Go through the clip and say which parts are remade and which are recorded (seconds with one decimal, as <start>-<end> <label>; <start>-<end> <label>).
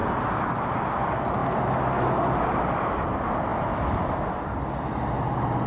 0.0-5.7 recorded